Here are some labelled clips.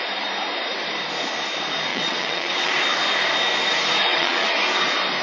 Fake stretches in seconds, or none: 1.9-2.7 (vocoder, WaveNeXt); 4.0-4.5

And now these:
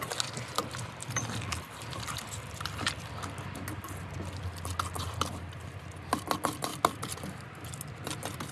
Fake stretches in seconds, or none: none

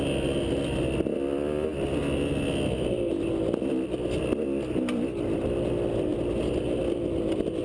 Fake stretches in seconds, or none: none

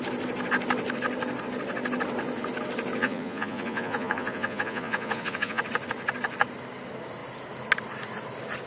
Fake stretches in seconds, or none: 3.0-5.6 (vocoder, Vocos)